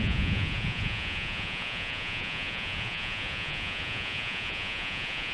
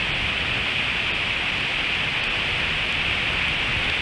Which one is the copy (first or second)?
first